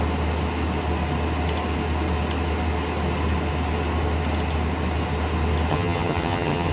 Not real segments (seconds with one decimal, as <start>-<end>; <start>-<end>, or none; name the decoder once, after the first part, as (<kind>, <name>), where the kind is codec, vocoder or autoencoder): 5.7-6.7 (vocoder, HiFi-GAN)